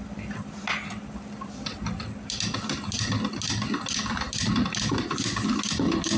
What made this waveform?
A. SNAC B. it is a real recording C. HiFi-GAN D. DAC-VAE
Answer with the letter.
B